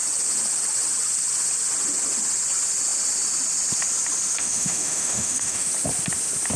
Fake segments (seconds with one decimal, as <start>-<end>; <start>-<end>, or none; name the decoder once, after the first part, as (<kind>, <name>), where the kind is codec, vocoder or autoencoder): 4.4-5.7 (autoencoder, DAC-VAE)